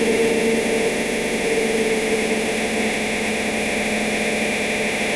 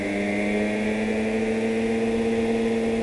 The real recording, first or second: second